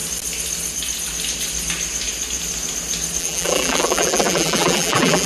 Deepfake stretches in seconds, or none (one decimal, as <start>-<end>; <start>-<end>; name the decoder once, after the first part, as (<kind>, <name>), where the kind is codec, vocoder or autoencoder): 3.2-5.3 (vocoder, BigVGAN v2)

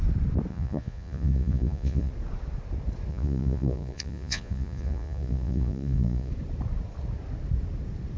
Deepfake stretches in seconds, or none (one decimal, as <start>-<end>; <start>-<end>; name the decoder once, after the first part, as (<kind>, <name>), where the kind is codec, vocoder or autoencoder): 0.5-2.1 (vocoder, Vocos); 3.1-6.3

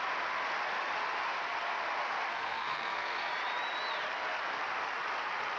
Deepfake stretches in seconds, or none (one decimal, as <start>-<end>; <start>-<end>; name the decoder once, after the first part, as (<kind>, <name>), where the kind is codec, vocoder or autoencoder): 2.3-3.3 (codec, SNAC)

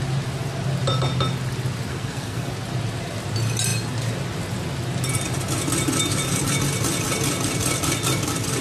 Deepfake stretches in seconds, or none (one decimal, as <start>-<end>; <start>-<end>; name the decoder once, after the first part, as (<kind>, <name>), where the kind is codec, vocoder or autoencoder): 1.9-2.5 (codec, SNAC)

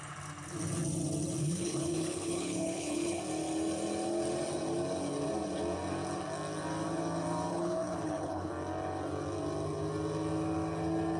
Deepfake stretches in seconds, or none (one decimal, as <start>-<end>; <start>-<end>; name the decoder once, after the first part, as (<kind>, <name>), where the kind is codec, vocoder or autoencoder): 1.4-3.2 (codec, HILCodec); 7.5-8.5

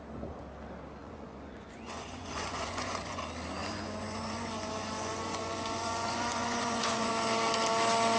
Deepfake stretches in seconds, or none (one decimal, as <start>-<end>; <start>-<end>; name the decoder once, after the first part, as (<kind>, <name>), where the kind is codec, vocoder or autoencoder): 1.0-3.2 (vocoder, Vocos); 3.6-7.1

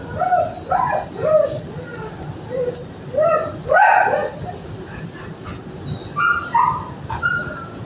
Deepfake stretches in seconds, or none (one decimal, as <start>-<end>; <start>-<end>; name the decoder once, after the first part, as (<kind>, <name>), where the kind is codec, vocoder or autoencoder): none